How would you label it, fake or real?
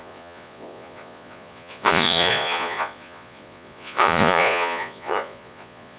fake